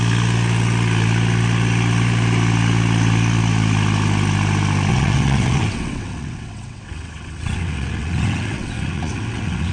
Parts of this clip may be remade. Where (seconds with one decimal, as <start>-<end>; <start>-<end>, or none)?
4.9-9.7